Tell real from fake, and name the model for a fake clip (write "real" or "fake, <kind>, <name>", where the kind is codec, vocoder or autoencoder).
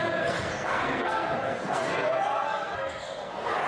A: fake, codec, SNAC